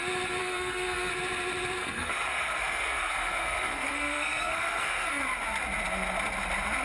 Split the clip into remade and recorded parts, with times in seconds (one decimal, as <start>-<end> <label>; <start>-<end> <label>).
0.0-0.4 recorded; 0.4-1.1 remade; 1.1-1.8 recorded; 1.8-5.2 remade; 5.2-6.8 recorded